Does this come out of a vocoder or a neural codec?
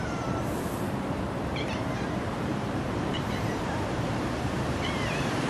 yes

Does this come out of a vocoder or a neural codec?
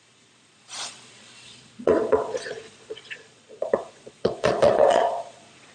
yes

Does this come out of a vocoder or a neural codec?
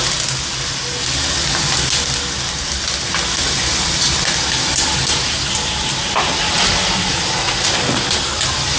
no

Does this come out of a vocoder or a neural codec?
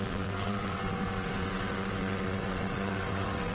yes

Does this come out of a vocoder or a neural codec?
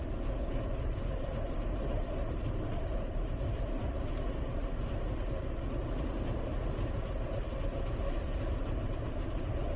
no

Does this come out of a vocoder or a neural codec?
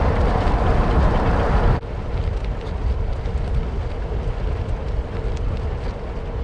no